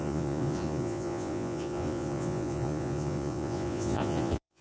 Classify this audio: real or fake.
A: fake